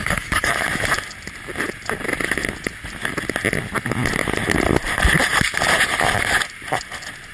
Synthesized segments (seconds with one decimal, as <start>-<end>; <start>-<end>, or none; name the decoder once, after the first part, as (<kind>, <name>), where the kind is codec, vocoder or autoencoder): 0.0-0.5 (codec, DAC)